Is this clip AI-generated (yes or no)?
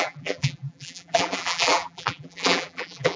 yes